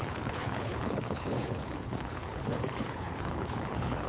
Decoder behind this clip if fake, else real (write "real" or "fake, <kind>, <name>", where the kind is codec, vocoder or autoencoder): fake, codec, HILCodec